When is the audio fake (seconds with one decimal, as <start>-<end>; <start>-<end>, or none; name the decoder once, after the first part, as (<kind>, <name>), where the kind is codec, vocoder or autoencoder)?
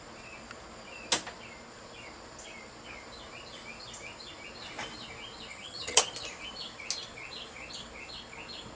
5.5-6.0 (vocoder, HiFi-GAN)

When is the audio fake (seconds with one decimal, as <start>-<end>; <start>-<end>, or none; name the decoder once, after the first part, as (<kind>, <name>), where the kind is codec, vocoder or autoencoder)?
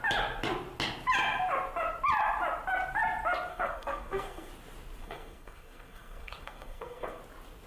3.5-4.5 (codec, SNAC); 5.0-7.2